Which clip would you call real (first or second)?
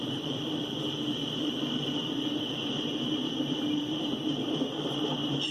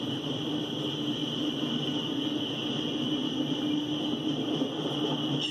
second